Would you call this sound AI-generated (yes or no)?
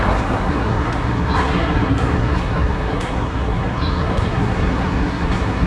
yes